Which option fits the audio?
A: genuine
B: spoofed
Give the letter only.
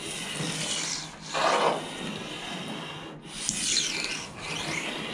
A